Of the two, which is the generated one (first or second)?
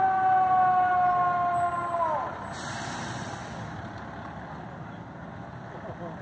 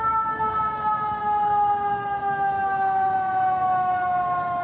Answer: second